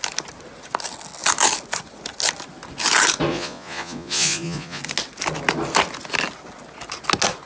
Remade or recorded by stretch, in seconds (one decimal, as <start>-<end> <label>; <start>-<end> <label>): 0.0-3.3 recorded; 3.3-4.8 remade; 4.8-7.5 recorded